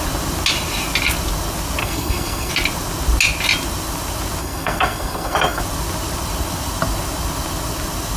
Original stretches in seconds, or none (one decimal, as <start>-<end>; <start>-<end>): 0.0-1.8; 2.5-4.4; 5.6-8.2